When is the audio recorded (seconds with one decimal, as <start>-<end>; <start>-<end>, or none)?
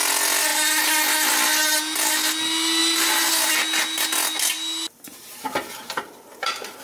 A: 0.0-2.8; 3.5-5.1; 5.8-6.8